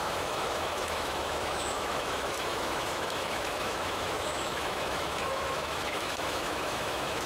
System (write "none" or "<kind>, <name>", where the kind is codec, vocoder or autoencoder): autoencoder, DAC-VAE